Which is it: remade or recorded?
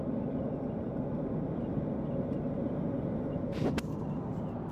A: recorded